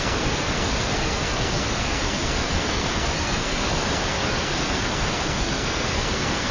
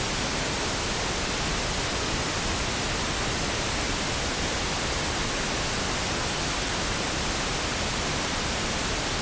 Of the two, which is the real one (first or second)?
second